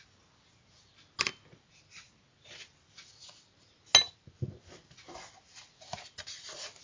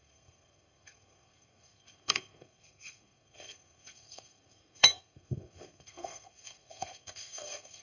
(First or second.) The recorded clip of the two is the first